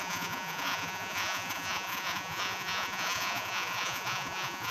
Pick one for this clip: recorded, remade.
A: remade